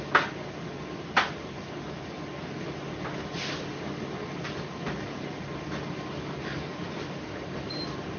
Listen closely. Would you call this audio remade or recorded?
recorded